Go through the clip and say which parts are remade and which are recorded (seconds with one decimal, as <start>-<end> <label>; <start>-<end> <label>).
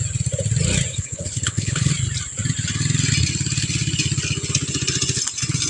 0.0-0.9 recorded; 0.9-1.9 remade; 1.9-5.7 recorded